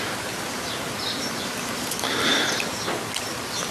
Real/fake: real